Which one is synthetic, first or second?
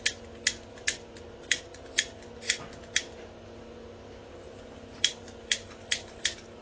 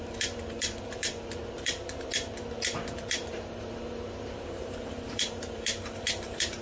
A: second